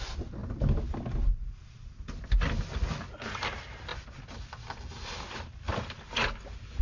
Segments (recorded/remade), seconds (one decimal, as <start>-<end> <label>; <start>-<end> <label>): 0.0-6.8 recorded